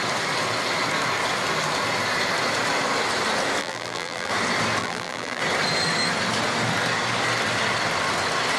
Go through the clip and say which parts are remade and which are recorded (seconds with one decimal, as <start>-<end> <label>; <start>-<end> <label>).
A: 0.0-3.6 recorded; 3.6-4.3 remade; 4.3-4.8 recorded; 4.8-5.4 remade; 5.4-8.6 recorded